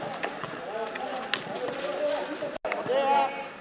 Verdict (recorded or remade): recorded